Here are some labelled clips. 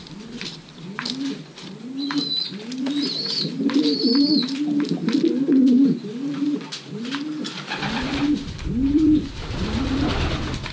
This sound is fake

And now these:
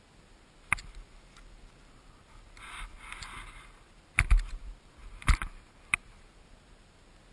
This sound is real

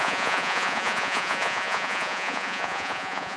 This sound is fake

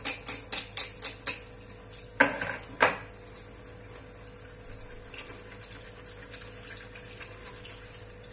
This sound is real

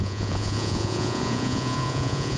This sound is fake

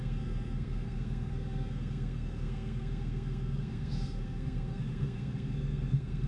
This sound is fake